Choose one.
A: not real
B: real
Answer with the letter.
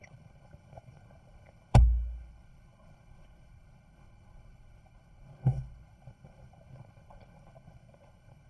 A